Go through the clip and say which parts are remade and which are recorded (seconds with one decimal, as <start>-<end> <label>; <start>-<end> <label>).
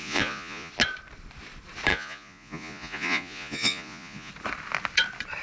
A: 0.0-0.7 remade; 0.7-1.9 recorded; 1.9-4.3 remade; 4.3-5.4 recorded